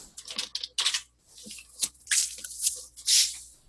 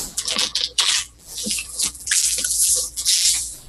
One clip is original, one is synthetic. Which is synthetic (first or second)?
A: second